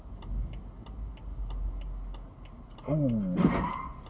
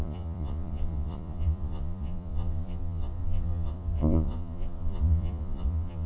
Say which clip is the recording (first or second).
first